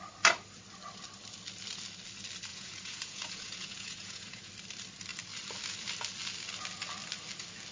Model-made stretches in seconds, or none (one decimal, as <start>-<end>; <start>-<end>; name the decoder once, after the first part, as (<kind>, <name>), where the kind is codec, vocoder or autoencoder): 2.5-4.5 (vocoder, Vocos)